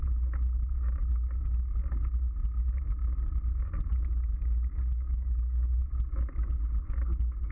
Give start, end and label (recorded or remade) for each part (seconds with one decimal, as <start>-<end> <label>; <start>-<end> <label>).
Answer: 0.0-4.3 recorded; 4.3-5.8 remade; 5.8-7.5 recorded

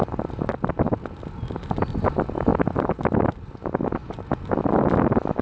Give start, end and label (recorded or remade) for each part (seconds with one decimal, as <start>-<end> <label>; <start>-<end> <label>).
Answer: 0.0-5.4 recorded

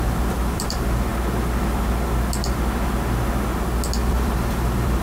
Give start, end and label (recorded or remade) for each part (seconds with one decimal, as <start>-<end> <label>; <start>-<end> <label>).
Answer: 0.0-1.1 remade; 1.1-4.1 recorded; 4.1-5.0 remade

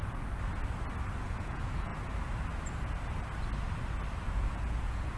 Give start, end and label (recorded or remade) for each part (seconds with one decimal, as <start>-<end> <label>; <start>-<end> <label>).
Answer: 0.0-1.3 recorded; 1.3-1.9 remade; 1.9-4.3 recorded; 4.3-5.2 remade

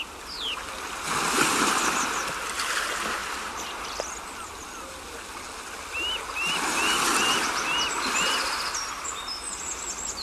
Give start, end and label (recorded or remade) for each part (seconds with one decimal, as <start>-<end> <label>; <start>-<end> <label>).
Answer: 0.0-10.2 recorded

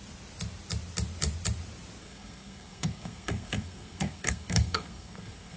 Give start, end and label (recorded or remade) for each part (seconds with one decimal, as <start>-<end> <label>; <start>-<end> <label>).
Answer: 0.0-2.0 recorded; 2.0-5.6 remade